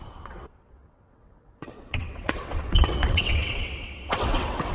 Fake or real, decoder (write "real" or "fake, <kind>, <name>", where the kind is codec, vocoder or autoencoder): fake, vocoder, WaveNeXt